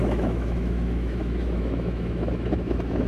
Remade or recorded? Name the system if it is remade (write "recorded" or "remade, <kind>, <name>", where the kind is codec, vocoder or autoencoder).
remade, autoencoder, DAC-VAE